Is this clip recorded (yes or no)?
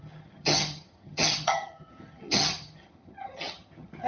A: no